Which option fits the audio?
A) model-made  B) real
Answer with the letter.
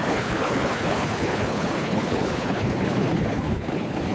A